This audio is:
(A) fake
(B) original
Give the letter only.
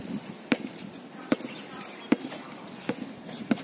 B